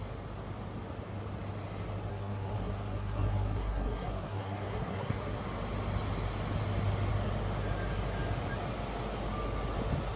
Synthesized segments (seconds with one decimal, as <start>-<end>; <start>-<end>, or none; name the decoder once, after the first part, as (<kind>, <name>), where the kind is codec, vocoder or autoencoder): 2.1-5.4 (codec, SNAC)